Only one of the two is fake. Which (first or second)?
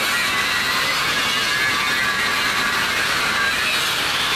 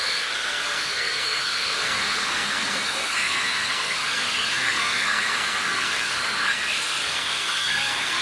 second